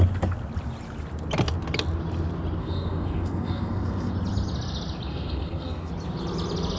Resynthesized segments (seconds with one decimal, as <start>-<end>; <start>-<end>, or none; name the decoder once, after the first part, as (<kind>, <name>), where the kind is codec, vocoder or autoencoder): 2.6-4.1 (codec, SNAC); 5.1-5.9